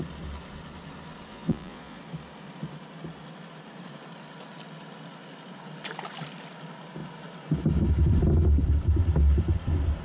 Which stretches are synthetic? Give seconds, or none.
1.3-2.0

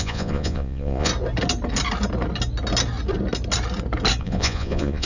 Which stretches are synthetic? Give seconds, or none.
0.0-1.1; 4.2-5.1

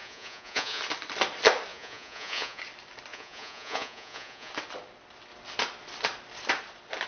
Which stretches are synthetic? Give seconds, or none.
0.0-0.8; 1.7-2.6; 3.1-4.5

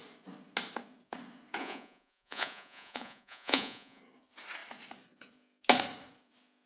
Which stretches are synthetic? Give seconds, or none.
1.6-4.0

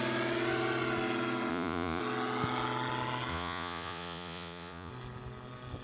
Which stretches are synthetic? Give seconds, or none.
1.5-2.0; 3.3-4.9